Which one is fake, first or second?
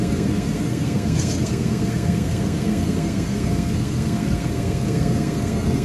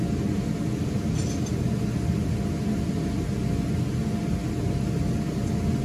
first